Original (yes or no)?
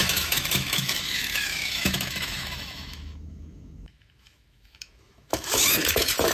no